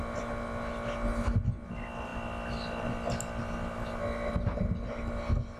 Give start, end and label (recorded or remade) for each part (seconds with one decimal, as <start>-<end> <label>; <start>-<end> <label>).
0.0-5.6 recorded